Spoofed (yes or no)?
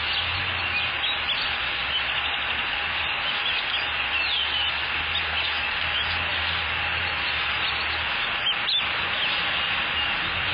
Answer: no